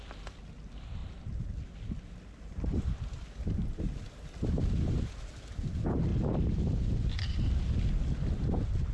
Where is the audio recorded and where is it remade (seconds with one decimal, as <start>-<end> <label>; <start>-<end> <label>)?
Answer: 0.0-6.1 recorded; 6.1-7.6 remade; 7.6-8.9 recorded